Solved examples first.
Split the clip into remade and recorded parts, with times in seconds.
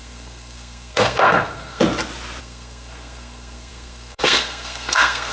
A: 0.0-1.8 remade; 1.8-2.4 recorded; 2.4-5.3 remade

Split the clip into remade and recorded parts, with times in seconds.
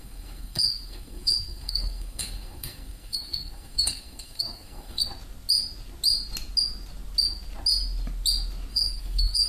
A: 0.0-5.0 remade; 5.0-8.7 recorded; 8.7-9.5 remade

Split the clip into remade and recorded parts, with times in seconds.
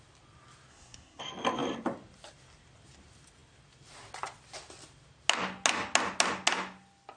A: 0.0-0.7 recorded; 0.7-1.2 remade; 1.2-7.2 recorded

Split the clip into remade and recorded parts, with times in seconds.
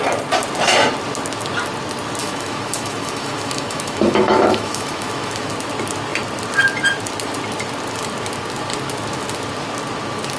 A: 0.0-2.2 recorded; 2.2-5.5 remade; 5.5-10.4 recorded